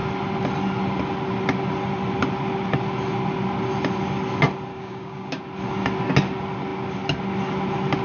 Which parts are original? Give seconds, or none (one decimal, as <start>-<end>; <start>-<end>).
0.0-4.7; 5.4-8.0